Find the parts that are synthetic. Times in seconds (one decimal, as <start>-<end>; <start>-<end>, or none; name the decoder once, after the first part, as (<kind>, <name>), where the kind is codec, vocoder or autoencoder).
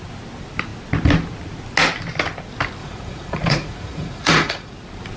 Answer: 2.8-4.7 (vocoder, Vocos)